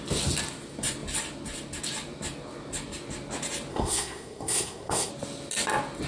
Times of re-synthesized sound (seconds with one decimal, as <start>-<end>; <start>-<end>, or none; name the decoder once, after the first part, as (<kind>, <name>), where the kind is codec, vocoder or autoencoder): 3.7-5.1 (codec, SNAC)